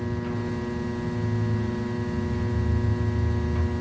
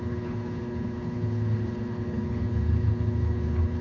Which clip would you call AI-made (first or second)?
second